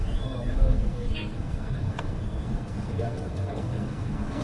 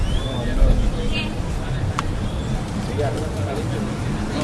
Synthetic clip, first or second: first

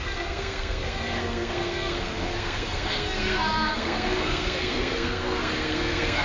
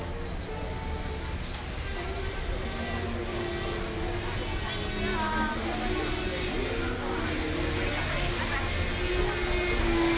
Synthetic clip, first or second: first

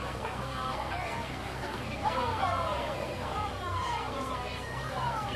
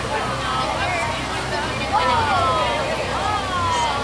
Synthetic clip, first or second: first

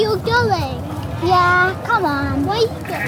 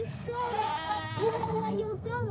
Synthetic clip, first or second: second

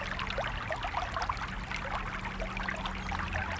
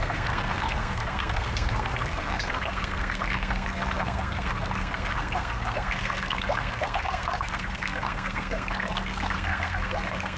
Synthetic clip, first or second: second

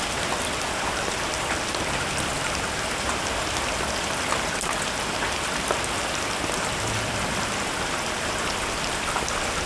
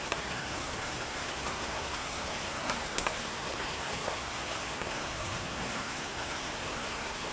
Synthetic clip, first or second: second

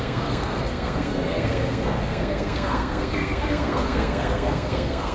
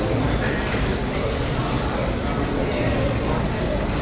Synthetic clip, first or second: first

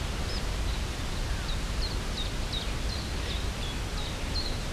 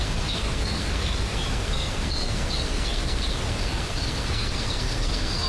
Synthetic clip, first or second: second